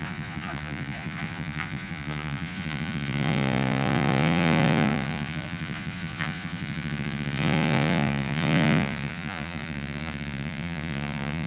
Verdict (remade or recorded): remade